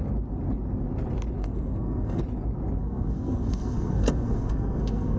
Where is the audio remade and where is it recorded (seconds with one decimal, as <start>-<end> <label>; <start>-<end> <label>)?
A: 0.0-1.4 recorded; 1.4-2.2 remade; 2.2-2.8 recorded; 2.8-5.2 remade